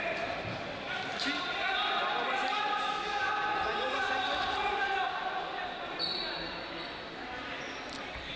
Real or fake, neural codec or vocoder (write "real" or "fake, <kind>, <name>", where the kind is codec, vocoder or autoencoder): real